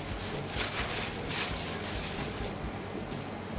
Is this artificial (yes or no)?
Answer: no